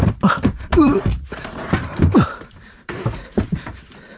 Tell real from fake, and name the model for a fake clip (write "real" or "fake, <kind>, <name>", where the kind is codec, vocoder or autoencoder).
fake, vocoder, BigVGAN v2